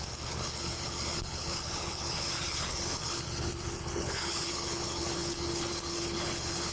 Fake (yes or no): yes